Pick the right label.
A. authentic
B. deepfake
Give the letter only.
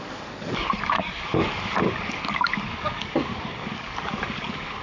B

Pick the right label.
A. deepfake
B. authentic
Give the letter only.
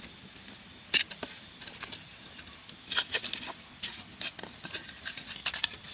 B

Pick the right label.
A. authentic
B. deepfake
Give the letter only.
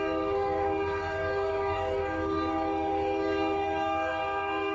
B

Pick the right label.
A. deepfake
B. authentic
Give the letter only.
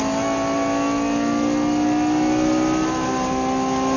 B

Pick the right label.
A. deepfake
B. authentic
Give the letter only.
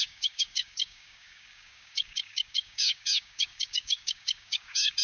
A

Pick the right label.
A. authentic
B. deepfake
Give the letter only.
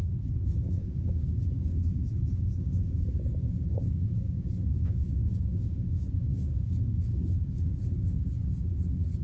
B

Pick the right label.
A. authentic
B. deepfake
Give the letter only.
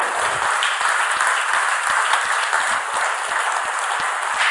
A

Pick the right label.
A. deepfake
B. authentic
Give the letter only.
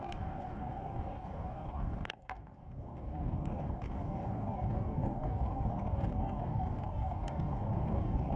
A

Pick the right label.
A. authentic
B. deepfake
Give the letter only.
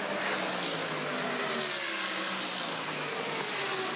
A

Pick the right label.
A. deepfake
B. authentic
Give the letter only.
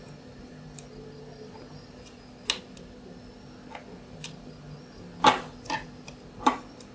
B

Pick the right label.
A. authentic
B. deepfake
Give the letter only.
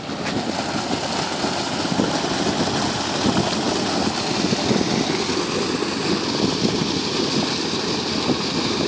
A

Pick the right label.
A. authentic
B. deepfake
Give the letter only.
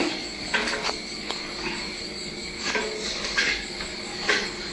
B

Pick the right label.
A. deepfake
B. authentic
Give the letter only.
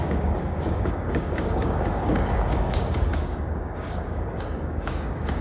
A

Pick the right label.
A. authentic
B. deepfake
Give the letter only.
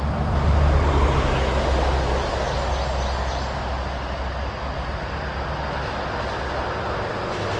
A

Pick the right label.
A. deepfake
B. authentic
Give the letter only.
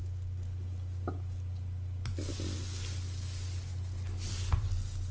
B